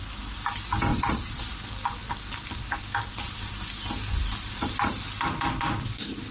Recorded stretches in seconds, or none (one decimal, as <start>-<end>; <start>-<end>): 0.0-0.9; 1.4-6.3